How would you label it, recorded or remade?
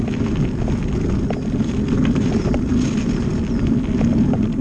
recorded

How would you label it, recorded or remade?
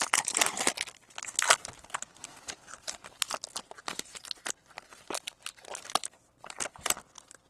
recorded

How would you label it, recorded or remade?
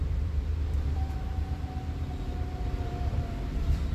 remade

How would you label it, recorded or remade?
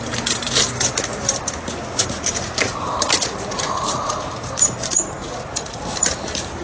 remade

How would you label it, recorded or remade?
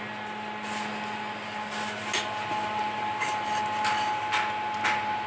recorded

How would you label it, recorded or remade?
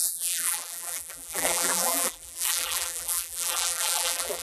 remade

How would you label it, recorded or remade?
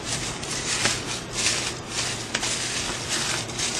remade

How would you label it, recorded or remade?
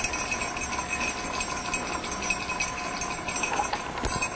recorded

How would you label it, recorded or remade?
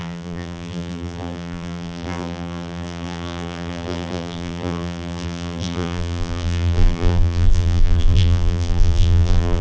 remade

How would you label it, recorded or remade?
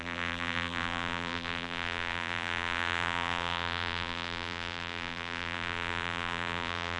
remade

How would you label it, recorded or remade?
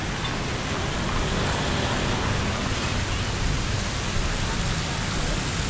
recorded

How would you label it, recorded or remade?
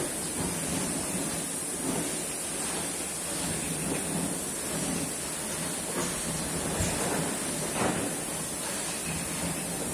recorded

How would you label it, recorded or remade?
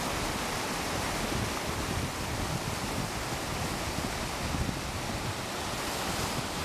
recorded